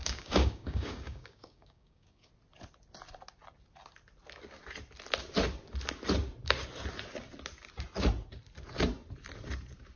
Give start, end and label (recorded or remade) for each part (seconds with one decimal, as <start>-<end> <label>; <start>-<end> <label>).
0.0-2.3 remade; 2.3-10.0 recorded